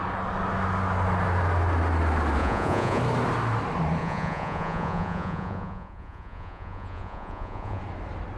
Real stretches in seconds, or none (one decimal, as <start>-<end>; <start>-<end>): 0.0-2.4; 3.0-4.0; 7.8-8.4